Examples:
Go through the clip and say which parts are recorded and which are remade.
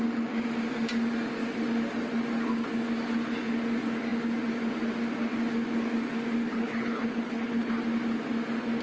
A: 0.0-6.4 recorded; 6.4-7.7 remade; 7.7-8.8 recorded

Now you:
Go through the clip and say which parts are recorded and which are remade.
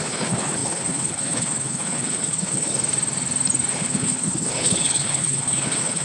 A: 0.0-2.7 remade; 2.7-3.7 recorded; 3.7-6.0 remade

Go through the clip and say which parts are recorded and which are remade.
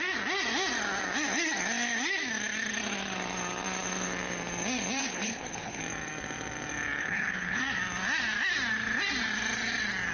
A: 0.0-5.0 recorded; 5.0-5.8 remade; 5.8-7.0 recorded; 7.0-7.6 remade; 7.6-10.1 recorded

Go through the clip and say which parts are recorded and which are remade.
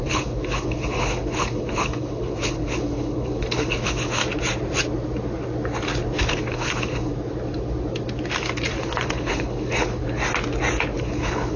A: 0.0-4.2 remade; 4.2-6.2 recorded; 6.2-7.1 remade; 7.1-8.8 recorded; 8.8-10.0 remade; 10.0-11.0 recorded; 11.0-11.6 remade